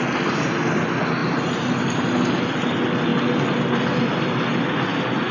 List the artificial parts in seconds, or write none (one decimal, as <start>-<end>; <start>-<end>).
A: none